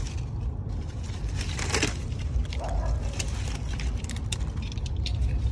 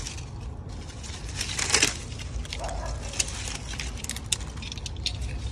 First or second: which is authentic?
second